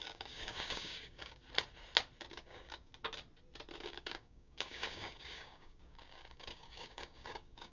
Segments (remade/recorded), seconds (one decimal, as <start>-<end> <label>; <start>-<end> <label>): 0.0-1.4 remade; 1.4-2.3 recorded; 2.3-2.9 remade; 2.9-3.8 recorded; 3.8-7.7 remade

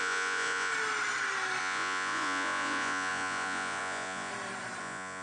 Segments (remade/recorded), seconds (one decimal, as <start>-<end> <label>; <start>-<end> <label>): 0.0-0.7 remade; 0.7-1.6 recorded; 1.6-4.3 remade; 4.3-4.8 recorded; 4.8-5.2 remade

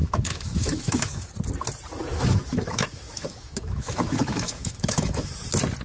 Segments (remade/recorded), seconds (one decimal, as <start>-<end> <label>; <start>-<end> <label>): 0.0-1.3 remade; 1.3-2.1 recorded; 2.1-5.3 remade; 5.3-5.8 recorded

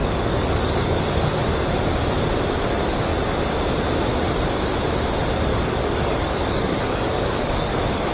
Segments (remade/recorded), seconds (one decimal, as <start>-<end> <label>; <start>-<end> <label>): 0.0-1.0 remade; 1.0-5.5 recorded; 5.5-8.1 remade

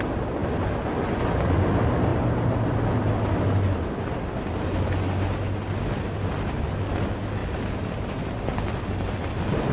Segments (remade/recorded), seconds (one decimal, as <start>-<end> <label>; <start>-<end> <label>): 0.0-9.7 recorded

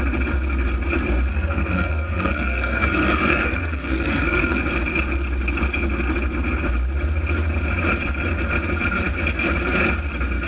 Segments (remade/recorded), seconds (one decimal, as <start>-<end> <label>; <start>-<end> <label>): 0.0-1.3 recorded; 1.3-4.6 remade; 4.6-10.5 recorded

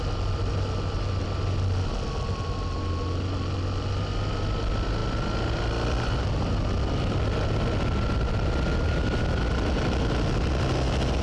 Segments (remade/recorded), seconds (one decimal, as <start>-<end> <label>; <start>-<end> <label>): 0.0-11.2 recorded

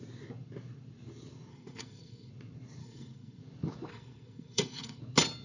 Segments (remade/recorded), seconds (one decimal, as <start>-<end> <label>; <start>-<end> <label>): 0.0-1.5 recorded; 1.5-2.3 remade; 2.3-2.8 recorded; 2.8-3.4 remade; 3.4-3.9 recorded; 3.9-5.0 remade; 5.0-5.4 recorded